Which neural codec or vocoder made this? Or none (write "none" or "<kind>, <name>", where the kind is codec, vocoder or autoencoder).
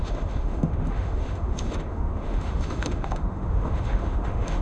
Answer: autoencoder, DAC-VAE